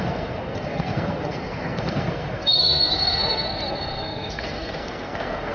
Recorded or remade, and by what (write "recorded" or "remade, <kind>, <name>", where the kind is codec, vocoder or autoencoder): remade, codec, SNAC